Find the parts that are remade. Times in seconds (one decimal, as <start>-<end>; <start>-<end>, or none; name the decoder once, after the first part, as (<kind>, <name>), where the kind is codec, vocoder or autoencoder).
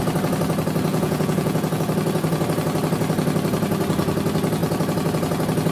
0.9-1.8 (vocoder, Vocos)